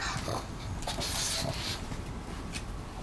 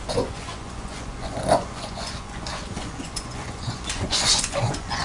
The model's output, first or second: second